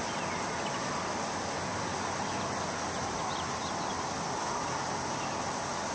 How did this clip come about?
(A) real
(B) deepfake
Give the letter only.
A